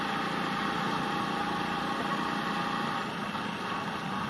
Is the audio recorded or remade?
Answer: recorded